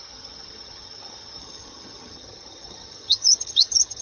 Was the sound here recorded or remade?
remade